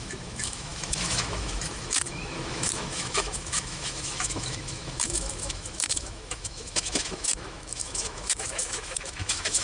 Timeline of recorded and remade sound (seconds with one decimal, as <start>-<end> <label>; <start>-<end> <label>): 0.0-9.6 remade